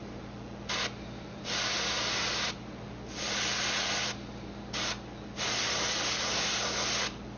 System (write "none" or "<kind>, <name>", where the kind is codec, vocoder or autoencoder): none